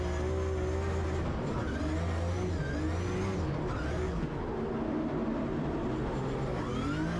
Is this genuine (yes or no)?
yes